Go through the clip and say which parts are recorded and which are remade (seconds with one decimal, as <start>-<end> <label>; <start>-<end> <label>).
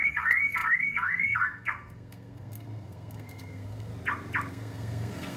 0.0-3.9 remade; 3.9-4.5 recorded; 4.5-5.4 remade